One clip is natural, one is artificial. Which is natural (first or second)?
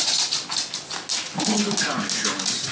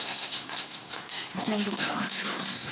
first